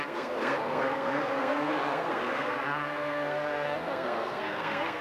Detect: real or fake fake